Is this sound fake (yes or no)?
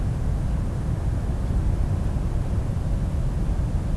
no